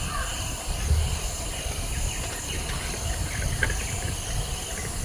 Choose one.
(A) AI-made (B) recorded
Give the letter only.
B